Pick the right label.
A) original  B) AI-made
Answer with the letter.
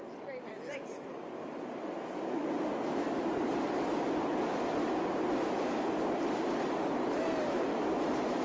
A